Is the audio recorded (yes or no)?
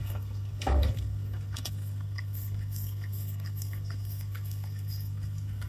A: no